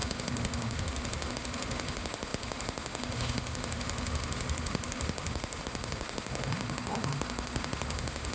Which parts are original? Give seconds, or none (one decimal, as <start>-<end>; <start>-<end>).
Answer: none